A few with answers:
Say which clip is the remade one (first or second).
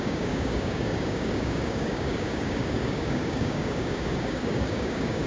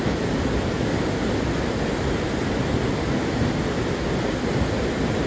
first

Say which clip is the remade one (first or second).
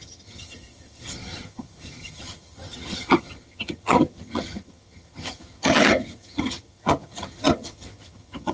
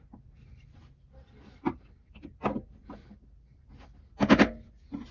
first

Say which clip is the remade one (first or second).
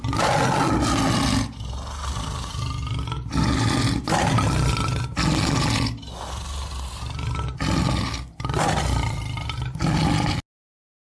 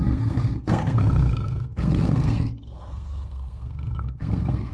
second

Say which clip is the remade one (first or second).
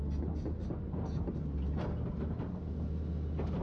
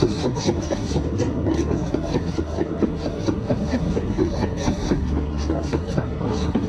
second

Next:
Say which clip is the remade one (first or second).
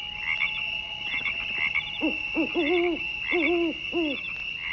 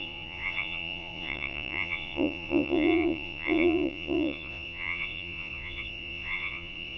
second